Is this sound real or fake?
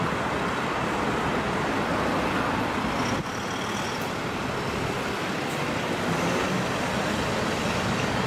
real